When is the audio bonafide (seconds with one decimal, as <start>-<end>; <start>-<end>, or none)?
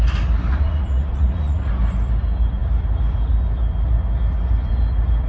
0.0-0.5; 1.7-5.3